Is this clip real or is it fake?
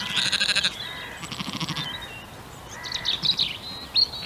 real